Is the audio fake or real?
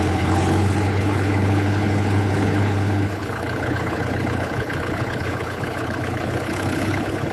fake